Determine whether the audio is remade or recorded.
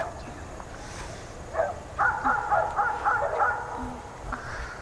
recorded